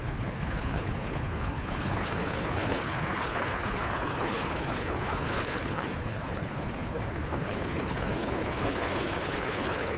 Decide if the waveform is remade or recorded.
remade